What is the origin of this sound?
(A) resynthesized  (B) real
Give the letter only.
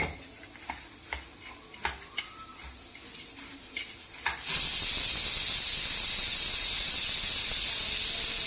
B